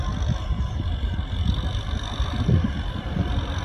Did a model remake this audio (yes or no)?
no